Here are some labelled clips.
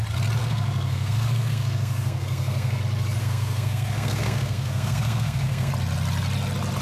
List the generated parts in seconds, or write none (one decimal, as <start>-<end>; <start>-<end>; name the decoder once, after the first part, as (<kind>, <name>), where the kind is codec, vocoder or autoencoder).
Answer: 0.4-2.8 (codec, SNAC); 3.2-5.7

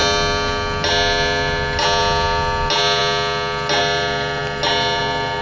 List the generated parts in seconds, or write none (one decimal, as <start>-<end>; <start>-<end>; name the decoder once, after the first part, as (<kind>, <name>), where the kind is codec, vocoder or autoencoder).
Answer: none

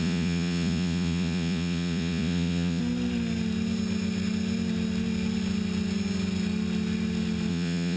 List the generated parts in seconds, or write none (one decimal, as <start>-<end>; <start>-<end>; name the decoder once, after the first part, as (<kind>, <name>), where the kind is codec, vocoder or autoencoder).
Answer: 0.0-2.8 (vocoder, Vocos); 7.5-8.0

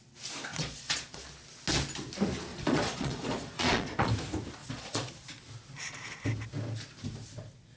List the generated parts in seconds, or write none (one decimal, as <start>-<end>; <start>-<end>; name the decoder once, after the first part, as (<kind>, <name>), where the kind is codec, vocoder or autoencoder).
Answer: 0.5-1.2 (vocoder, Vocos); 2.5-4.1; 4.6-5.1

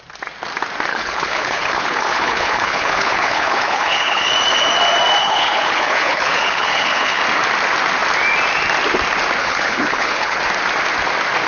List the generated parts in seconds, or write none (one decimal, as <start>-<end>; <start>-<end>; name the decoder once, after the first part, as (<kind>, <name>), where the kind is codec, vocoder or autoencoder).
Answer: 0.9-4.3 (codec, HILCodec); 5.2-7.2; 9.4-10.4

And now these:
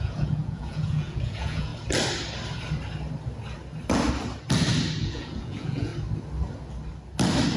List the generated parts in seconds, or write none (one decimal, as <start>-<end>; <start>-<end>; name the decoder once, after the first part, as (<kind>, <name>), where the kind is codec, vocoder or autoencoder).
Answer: 0.0-1.7 (vocoder, Vocos); 5.0-5.9

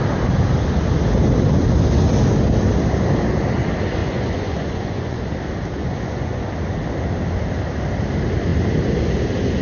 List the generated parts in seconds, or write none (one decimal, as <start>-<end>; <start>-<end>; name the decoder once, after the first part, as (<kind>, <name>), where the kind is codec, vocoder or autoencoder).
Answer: 4.0-5.3 (vocoder, Vocos); 5.8-6.4

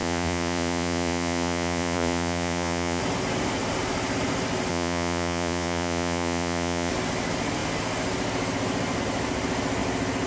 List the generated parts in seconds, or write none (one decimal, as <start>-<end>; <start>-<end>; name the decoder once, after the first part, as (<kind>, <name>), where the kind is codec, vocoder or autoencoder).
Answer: 0.0-3.0 (vocoder, Vocos); 4.7-6.9